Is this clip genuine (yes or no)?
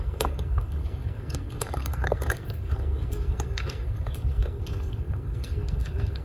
no